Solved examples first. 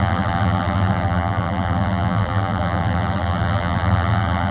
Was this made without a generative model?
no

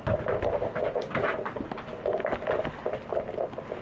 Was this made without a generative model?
yes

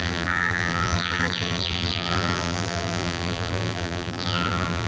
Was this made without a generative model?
no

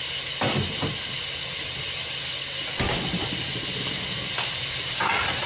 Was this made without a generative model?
yes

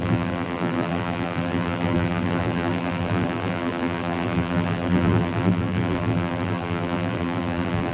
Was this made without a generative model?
no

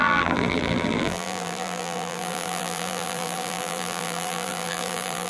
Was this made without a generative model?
no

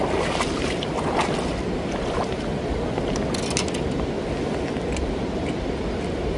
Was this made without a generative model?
yes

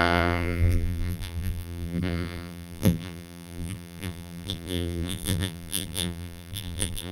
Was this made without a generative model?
no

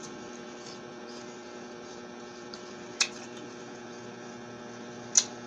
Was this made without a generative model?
yes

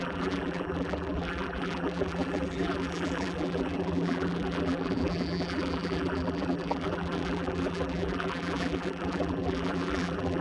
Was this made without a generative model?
no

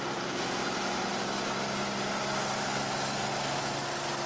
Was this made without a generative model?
yes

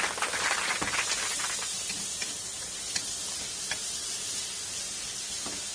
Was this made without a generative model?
yes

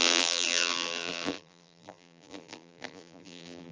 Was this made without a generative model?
no